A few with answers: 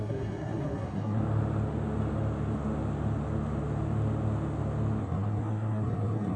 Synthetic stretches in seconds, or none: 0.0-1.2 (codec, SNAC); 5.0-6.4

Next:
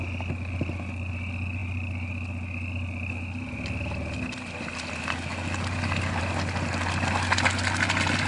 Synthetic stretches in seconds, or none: none